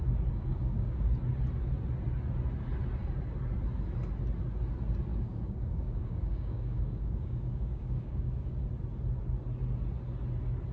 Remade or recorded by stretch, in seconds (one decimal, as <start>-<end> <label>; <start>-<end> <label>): 0.0-0.5 recorded; 0.5-1.1 remade; 1.1-5.1 recorded; 5.1-8.6 remade; 8.6-10.7 recorded